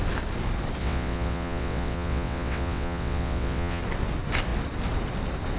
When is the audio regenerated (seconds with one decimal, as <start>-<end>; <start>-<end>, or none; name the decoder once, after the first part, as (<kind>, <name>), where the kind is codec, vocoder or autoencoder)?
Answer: 0.8-3.8 (vocoder, WaveNeXt)